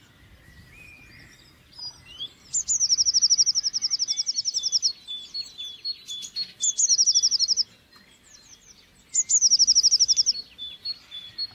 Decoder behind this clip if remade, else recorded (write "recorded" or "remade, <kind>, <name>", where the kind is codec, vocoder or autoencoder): recorded